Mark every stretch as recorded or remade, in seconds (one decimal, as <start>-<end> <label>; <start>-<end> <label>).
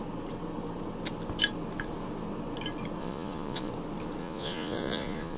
0.0-3.0 recorded; 3.0-3.7 remade; 3.7-4.2 recorded; 4.2-5.4 remade